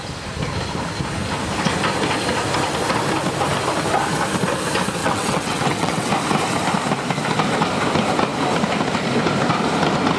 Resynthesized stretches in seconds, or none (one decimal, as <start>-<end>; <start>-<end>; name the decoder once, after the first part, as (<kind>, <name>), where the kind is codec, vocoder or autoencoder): 5.0-6.1 (vocoder, WaveNeXt)